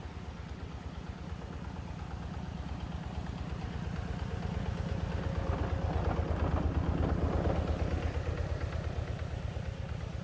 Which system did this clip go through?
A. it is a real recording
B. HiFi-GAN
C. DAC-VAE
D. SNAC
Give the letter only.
A